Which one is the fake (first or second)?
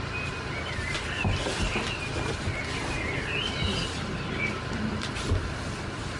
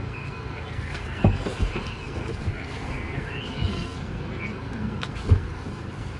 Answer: second